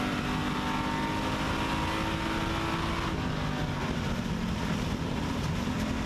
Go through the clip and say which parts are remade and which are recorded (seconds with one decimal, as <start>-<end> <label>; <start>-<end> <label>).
0.0-0.4 remade; 0.4-3.6 recorded; 3.6-6.1 remade